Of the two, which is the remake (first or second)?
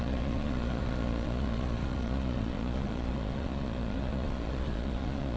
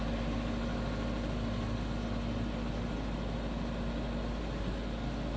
first